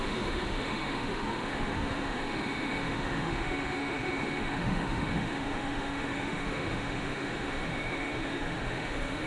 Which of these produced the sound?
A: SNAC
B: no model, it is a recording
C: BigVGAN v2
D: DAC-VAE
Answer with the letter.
D